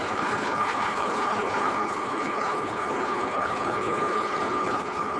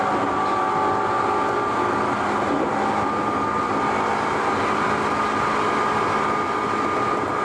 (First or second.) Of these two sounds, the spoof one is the first